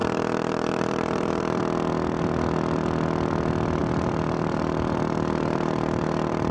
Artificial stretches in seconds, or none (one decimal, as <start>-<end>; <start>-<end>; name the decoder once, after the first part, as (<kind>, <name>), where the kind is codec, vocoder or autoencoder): 0.0-1.6 (vocoder, BigVGAN v2); 3.8-6.5